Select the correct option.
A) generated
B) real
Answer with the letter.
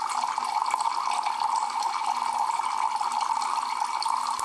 B